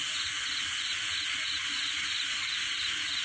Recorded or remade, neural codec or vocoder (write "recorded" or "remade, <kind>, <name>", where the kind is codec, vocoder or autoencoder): recorded